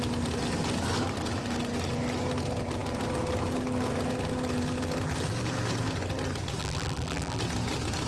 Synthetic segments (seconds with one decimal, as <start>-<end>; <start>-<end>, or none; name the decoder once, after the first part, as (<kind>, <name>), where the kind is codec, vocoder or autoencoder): 6.6-7.4 (vocoder, BigVGAN v2)